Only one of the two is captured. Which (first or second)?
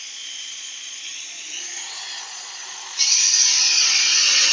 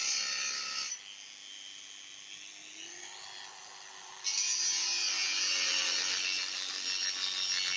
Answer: second